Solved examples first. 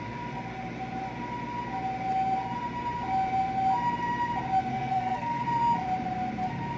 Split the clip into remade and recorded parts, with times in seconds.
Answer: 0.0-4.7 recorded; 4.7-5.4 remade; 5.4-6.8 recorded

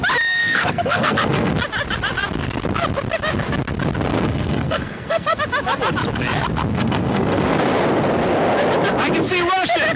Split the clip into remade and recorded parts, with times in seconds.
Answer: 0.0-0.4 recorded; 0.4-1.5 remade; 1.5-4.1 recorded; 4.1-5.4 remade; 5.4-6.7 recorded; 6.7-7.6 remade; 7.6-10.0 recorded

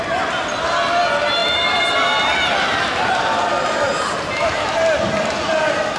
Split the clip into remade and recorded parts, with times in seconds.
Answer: 0.0-6.0 recorded

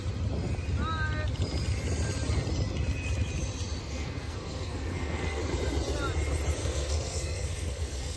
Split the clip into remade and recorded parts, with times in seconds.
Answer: 0.0-3.8 recorded; 3.8-5.4 remade; 5.4-6.6 recorded; 6.6-8.2 remade

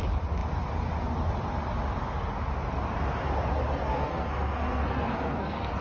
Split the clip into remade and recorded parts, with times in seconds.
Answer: 0.0-3.9 recorded; 3.9-5.8 remade